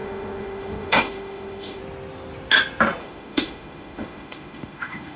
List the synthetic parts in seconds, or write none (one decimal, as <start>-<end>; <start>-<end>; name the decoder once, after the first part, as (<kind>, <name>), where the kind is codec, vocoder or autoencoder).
0.0-1.8 (autoencoder, DAC-VAE); 3.0-5.2